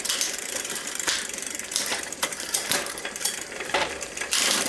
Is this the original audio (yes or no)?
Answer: no